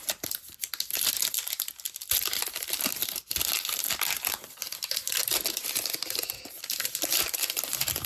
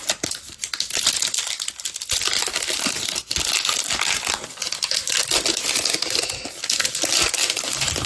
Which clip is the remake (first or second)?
first